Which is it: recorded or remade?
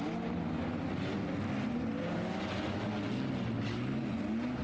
recorded